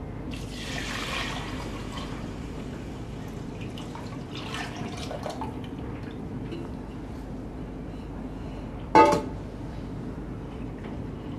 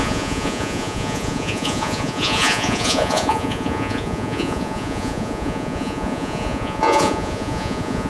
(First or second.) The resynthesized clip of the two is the second